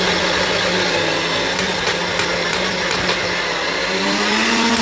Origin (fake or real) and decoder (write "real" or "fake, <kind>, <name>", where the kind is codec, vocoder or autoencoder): real